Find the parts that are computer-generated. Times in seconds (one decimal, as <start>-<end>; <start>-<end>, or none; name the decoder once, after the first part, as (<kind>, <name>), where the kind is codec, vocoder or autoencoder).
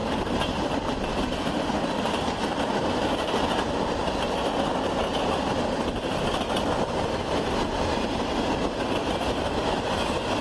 none